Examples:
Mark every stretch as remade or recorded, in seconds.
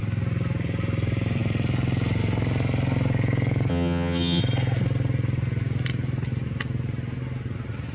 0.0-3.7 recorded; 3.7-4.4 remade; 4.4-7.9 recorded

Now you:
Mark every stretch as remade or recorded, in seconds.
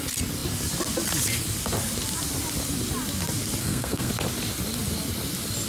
0.0-3.6 recorded; 3.6-4.1 remade; 4.1-5.7 recorded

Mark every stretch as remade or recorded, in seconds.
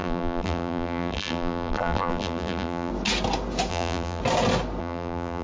0.0-2.9 remade; 2.9-3.7 recorded; 3.7-4.2 remade; 4.2-4.8 recorded; 4.8-5.4 remade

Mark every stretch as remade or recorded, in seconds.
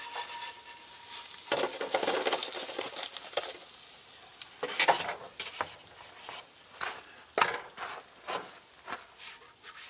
0.0-2.4 recorded; 2.4-3.5 remade; 3.5-4.3 recorded; 4.3-6.6 remade; 6.6-9.9 recorded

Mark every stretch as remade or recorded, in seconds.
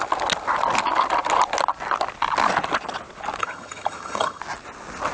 0.0-3.4 recorded; 3.4-4.4 remade; 4.4-5.1 recorded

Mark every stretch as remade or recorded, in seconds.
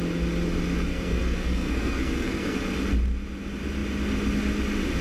0.0-0.9 recorded; 0.9-2.6 remade; 2.6-5.0 recorded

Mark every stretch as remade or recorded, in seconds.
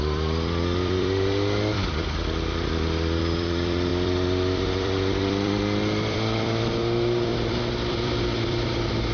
0.0-1.8 remade; 1.8-3.2 recorded; 3.2-7.3 remade; 7.3-7.9 recorded; 7.9-9.1 remade